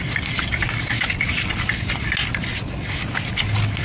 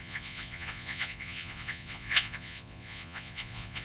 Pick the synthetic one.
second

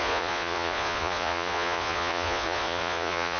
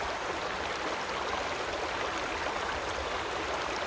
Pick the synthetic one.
first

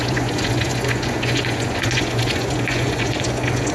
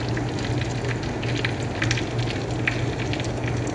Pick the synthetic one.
first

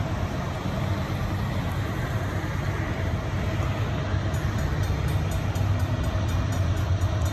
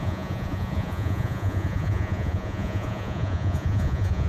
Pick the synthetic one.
second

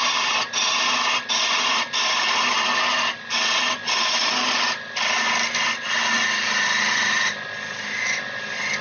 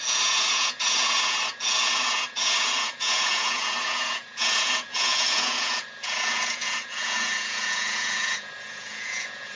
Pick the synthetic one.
second